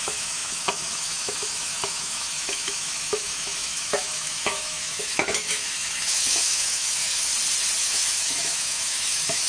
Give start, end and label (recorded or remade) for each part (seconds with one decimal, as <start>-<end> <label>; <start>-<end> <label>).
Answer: 0.0-7.3 remade; 7.3-7.8 recorded; 7.8-9.5 remade